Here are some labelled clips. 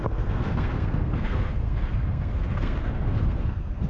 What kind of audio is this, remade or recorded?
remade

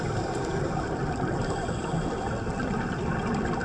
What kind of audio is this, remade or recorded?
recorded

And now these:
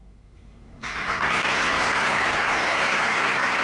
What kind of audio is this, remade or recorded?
remade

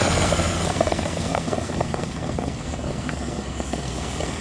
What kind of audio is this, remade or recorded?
remade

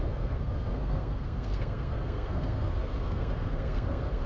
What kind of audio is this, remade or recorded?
remade